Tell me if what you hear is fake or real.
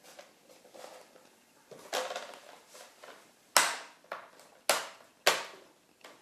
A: real